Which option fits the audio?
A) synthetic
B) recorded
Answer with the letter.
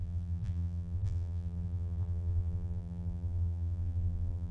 A